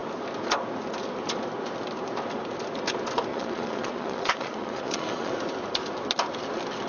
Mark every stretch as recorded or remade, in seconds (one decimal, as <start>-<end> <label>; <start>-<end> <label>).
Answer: 0.0-3.3 recorded; 3.3-5.3 remade; 5.3-6.9 recorded